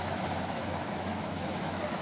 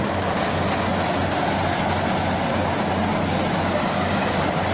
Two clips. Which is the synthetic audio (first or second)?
first